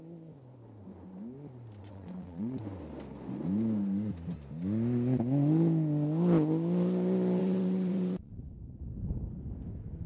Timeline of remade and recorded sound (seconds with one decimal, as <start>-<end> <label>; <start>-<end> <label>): 0.0-1.8 recorded; 1.8-2.6 remade; 2.6-7.4 recorded; 7.4-8.3 remade; 8.3-10.1 recorded